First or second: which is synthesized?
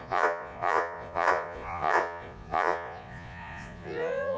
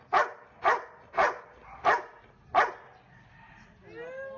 first